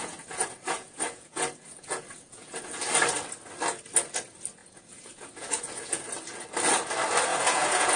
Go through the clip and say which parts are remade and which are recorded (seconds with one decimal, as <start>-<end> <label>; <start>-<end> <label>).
0.0-2.8 remade; 2.8-4.6 recorded; 4.6-6.0 remade; 6.0-7.3 recorded; 7.3-8.0 remade